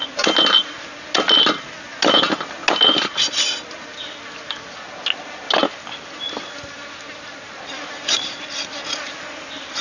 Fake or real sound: real